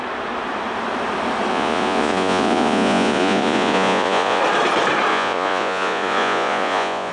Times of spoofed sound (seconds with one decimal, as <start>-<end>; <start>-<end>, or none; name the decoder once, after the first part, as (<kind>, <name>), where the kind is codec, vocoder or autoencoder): 1.5-4.4 (vocoder, Vocos); 5.1-7.1